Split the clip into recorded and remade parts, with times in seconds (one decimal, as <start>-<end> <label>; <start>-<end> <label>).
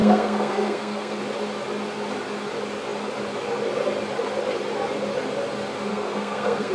0.0-1.2 remade; 1.2-5.9 recorded; 5.9-6.7 remade